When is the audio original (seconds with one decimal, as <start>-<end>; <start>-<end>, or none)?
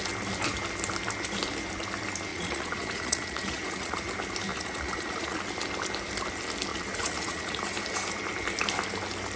0.0-2.3; 4.1-4.5; 5.4-6.7; 7.6-9.4